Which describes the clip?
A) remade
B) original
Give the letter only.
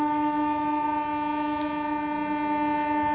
B